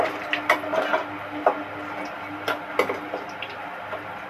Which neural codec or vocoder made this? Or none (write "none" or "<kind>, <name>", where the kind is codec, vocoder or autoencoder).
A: none